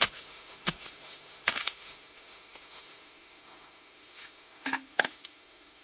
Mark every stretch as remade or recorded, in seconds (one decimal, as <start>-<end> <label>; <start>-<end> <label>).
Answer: 0.0-5.8 remade